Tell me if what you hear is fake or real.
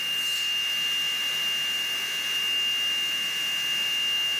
real